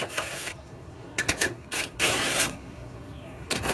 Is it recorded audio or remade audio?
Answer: remade